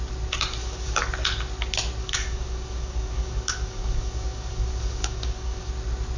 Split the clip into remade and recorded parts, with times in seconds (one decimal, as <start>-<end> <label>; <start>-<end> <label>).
0.0-0.6 recorded; 0.6-1.1 remade; 1.1-2.0 recorded; 2.0-5.7 remade; 5.7-6.2 recorded